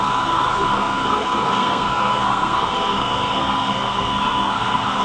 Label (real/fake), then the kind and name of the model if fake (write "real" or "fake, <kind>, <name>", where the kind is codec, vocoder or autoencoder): fake, codec, SNAC